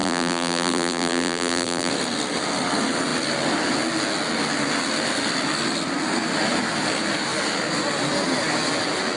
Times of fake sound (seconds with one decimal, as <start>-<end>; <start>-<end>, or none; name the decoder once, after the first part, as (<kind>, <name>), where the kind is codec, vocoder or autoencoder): 0.0-1.9 (vocoder, BigVGAN v2)